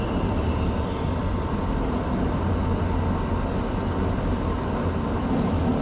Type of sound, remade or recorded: recorded